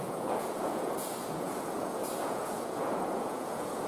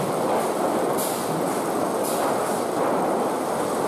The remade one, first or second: first